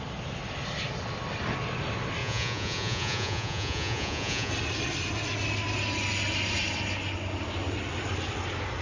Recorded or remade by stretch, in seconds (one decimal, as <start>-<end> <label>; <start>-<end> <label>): 0.0-2.2 recorded; 2.2-4.5 remade; 4.5-8.8 recorded